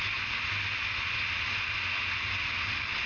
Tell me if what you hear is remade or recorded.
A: recorded